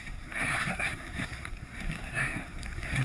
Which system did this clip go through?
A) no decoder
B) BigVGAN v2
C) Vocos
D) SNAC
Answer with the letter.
D